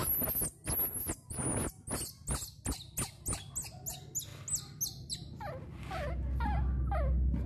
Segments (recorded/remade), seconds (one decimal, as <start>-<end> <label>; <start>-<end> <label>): 0.0-7.5 recorded